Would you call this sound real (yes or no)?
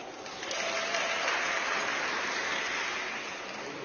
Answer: yes